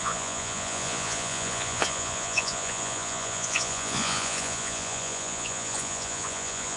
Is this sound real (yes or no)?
no